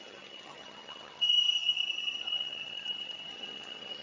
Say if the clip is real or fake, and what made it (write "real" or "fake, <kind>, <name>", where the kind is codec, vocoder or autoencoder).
fake, vocoder, HiFi-GAN